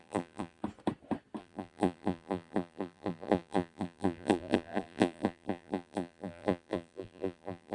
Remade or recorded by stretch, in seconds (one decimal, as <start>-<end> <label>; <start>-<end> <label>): 0.0-0.6 remade; 0.6-1.4 recorded; 1.4-7.7 remade